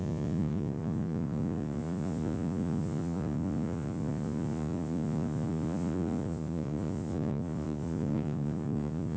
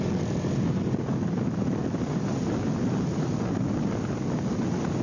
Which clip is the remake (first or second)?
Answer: first